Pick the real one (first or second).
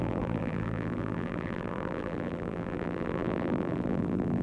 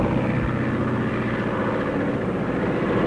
second